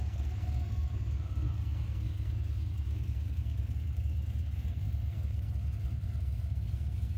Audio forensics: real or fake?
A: fake